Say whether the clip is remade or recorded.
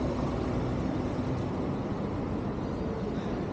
recorded